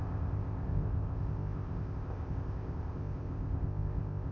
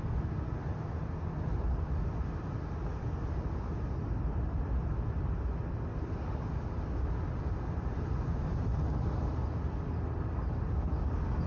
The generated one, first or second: first